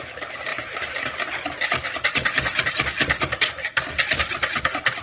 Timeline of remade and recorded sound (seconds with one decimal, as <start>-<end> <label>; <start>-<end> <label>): 0.0-5.0 recorded